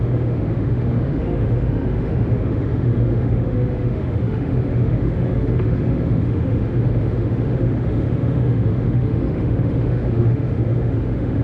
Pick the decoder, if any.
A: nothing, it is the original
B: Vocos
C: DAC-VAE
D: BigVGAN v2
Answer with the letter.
C